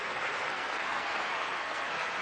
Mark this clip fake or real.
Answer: fake